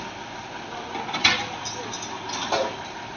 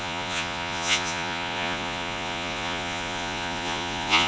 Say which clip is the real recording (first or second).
first